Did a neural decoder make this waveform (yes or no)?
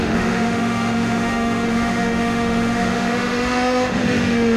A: yes